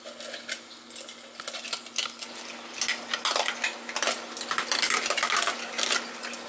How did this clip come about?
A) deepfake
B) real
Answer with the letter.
B